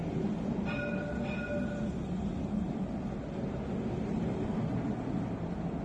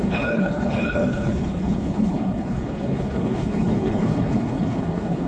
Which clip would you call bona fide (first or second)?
first